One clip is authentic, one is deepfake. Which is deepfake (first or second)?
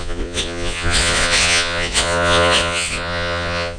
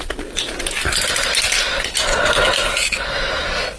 first